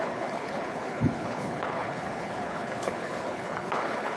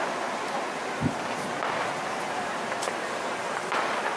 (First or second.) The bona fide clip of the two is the second